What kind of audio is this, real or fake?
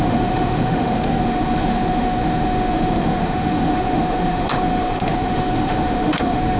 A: fake